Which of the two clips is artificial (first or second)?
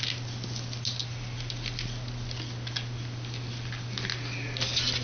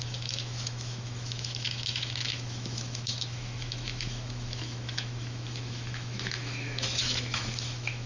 second